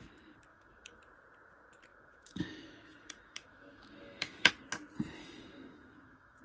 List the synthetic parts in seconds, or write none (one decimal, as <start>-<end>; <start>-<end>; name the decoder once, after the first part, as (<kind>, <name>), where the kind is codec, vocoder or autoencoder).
0.5-1.0 (autoencoder, DAC-VAE); 1.9-4.5; 5.2-6.4